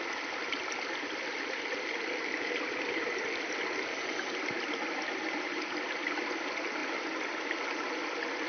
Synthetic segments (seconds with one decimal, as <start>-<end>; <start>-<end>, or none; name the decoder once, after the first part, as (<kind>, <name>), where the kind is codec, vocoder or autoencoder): none